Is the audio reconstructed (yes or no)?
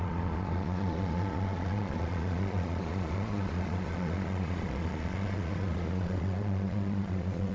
yes